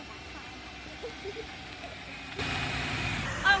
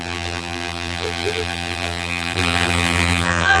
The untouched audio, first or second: first